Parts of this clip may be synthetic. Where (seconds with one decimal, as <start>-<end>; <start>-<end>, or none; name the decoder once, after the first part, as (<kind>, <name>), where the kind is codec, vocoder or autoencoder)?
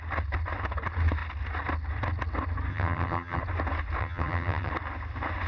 2.7-3.4 (vocoder, HiFi-GAN); 4.0-4.7